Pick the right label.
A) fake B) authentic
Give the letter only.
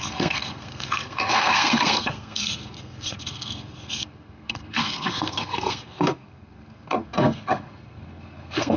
A